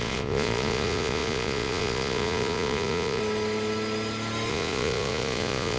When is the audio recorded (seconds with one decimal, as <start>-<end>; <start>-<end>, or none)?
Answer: 3.2-4.5